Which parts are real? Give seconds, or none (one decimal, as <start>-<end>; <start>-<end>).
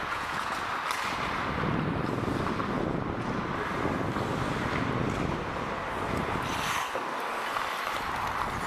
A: 0.5-8.7